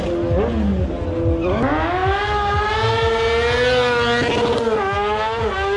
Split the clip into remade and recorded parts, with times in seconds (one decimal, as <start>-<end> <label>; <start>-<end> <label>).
0.0-5.8 recorded